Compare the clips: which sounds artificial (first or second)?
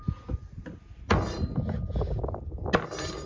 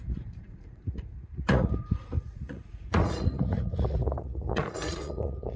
second